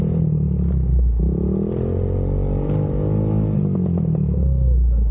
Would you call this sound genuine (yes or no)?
yes